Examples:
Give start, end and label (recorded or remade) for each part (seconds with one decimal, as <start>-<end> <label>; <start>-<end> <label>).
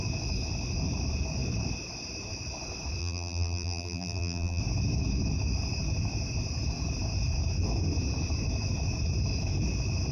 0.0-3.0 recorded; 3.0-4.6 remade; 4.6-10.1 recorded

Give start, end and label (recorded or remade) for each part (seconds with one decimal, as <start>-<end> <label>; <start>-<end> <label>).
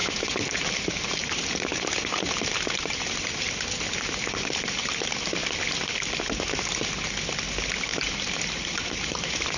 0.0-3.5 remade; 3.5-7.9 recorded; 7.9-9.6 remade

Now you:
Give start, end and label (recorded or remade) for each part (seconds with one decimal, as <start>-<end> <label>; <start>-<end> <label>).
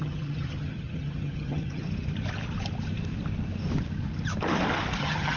0.0-1.8 remade; 1.8-5.0 recorded; 5.0-5.4 remade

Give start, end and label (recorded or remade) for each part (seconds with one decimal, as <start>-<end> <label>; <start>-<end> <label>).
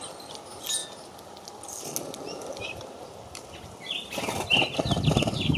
0.0-5.6 recorded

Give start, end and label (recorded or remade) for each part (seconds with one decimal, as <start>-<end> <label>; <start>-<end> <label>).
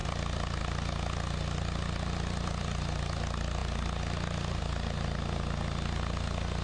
0.0-6.6 recorded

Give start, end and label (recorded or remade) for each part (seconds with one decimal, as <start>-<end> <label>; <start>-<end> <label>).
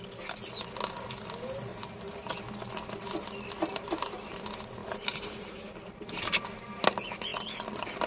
0.0-1.7 recorded; 1.7-2.4 remade; 2.4-4.8 recorded; 4.8-5.7 remade; 5.7-8.1 recorded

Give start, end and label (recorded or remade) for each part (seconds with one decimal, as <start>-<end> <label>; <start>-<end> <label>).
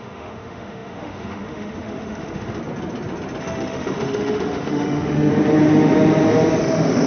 0.0-2.6 remade; 2.6-3.4 recorded; 3.4-5.3 remade; 5.3-6.6 recorded; 6.6-7.1 remade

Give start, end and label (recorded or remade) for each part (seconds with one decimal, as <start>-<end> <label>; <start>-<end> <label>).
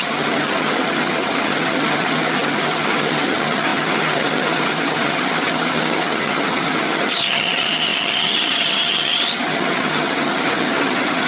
0.0-11.3 remade